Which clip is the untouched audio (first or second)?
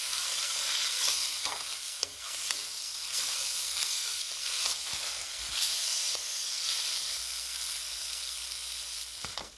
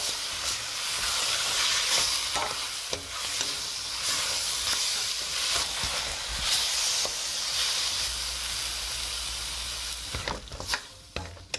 second